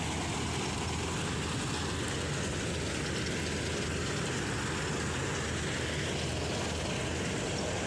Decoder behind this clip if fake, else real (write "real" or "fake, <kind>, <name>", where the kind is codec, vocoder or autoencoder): real